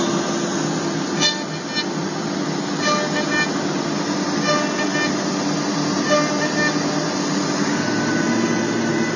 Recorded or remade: recorded